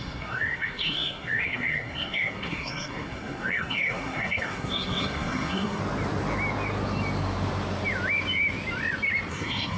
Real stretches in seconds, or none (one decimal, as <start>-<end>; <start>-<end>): 5.8-9.3